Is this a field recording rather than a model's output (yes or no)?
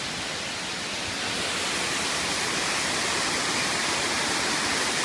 yes